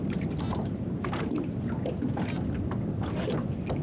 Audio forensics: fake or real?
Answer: real